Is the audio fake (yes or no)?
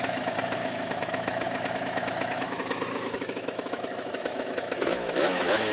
yes